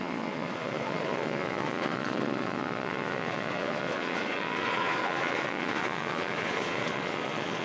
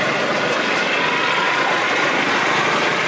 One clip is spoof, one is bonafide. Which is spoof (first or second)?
first